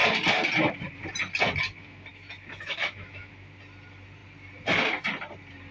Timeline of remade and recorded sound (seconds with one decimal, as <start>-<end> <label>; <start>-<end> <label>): 0.0-2.1 recorded; 2.1-3.3 remade; 3.3-5.7 recorded